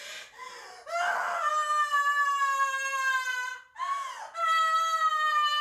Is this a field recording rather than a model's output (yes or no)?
yes